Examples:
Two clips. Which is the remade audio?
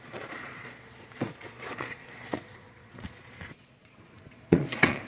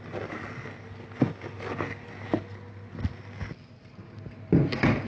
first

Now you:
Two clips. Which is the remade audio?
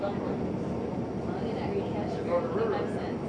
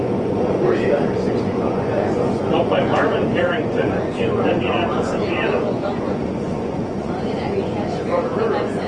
second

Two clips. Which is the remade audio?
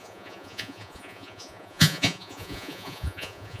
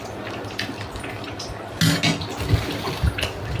first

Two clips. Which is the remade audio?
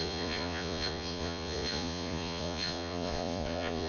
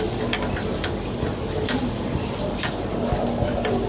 first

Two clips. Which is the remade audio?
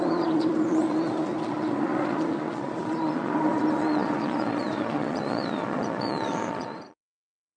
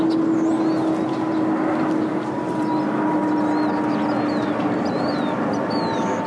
first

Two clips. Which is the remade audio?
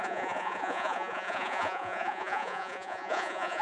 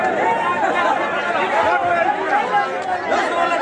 first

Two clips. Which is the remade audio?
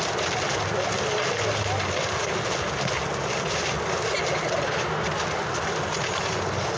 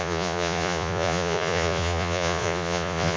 second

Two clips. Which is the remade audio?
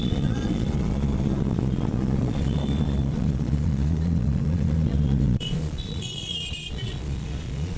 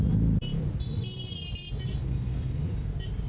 first